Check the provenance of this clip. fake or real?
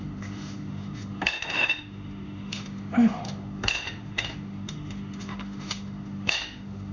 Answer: fake